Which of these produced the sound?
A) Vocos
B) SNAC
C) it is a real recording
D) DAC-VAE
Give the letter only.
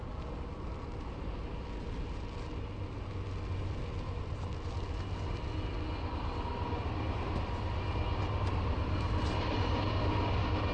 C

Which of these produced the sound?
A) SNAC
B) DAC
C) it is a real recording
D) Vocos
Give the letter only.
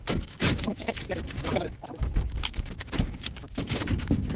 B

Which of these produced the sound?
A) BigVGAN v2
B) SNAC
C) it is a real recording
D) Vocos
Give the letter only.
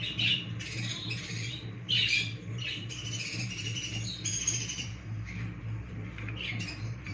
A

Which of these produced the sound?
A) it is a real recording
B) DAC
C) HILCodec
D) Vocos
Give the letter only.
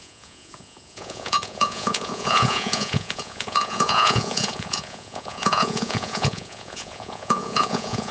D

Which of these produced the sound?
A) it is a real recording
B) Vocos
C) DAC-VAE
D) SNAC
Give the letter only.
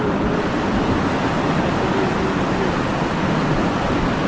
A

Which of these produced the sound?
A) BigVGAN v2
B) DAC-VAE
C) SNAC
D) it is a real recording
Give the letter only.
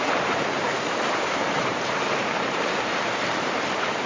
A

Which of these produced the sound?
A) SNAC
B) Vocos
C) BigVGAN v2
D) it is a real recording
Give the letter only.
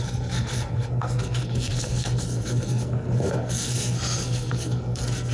A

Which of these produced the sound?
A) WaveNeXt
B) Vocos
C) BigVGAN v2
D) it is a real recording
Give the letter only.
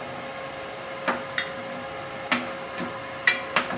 D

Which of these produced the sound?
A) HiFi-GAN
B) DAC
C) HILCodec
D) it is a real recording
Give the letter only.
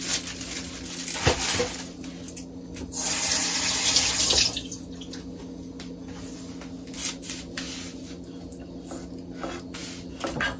D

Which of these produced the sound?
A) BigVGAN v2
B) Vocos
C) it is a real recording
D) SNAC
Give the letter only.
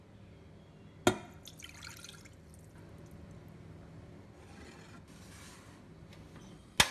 C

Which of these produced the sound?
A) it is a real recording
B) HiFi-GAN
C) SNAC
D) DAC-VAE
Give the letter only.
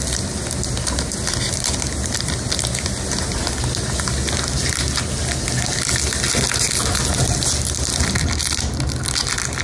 A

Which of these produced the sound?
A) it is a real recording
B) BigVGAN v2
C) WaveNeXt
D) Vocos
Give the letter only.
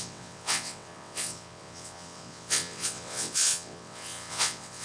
C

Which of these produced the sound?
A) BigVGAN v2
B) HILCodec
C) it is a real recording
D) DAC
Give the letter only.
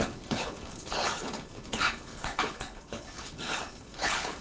B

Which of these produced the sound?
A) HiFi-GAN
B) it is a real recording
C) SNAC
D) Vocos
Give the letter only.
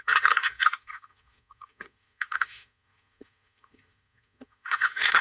C